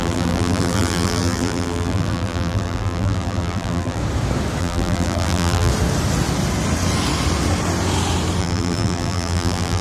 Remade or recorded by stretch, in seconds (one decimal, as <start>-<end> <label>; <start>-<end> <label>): 0.0-4.0 remade; 4.0-4.6 recorded; 4.6-5.7 remade; 5.7-8.4 recorded; 8.4-9.8 remade